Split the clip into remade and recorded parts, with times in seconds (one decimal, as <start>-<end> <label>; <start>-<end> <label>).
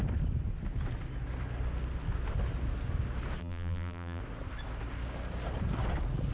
0.0-3.4 recorded; 3.4-4.2 remade; 4.2-6.3 recorded